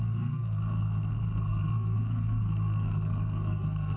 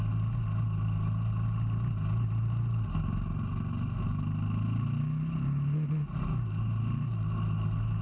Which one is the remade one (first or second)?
first